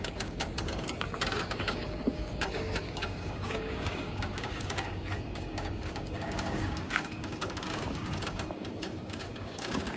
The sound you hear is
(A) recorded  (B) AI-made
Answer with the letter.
B